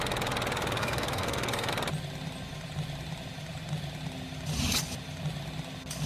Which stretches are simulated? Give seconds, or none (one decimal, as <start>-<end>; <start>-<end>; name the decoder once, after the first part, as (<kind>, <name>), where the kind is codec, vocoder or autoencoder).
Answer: 0.8-1.7 (codec, SNAC)